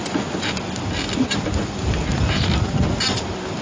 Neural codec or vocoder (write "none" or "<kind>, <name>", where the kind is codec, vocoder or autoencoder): none